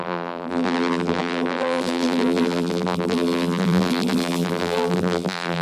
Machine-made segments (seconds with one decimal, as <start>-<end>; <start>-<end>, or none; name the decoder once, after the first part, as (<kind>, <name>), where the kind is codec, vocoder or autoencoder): 0.0-5.6 (vocoder, BigVGAN v2)